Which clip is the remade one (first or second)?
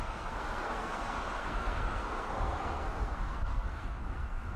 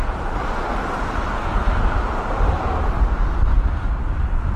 first